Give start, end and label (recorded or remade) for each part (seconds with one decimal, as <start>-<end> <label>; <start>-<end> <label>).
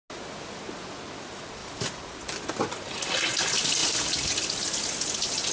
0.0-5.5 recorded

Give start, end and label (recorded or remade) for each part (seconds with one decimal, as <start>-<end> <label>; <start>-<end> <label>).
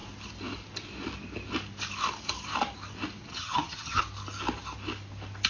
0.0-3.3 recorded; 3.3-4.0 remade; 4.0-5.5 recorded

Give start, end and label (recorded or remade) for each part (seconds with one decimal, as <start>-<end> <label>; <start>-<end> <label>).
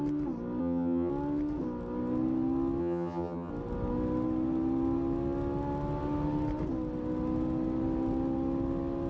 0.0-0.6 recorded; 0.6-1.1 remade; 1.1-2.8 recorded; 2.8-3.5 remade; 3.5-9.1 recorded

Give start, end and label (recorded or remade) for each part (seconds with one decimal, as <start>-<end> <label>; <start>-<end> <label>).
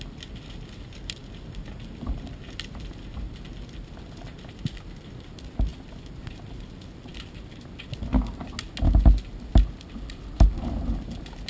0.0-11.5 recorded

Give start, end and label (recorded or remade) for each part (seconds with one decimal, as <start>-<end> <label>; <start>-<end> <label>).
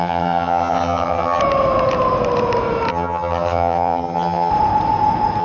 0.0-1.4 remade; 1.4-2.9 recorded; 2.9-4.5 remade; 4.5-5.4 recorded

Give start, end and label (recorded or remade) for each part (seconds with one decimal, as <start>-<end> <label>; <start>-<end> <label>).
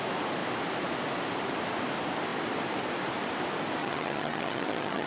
0.0-3.8 recorded; 3.8-5.1 remade